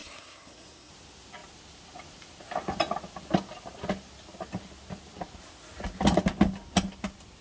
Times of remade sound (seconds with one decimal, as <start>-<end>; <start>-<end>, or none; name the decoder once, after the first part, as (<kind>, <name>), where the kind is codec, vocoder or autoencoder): 0.0-0.9 (codec, SNAC)